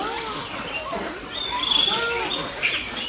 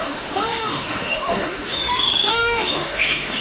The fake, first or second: second